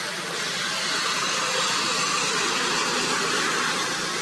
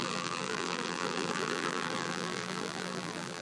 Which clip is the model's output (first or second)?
second